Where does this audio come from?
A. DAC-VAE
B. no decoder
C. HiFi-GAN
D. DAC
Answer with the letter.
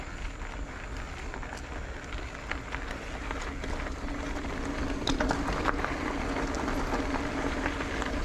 B